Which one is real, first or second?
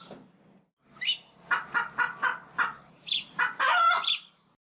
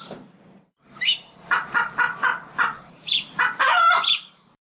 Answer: first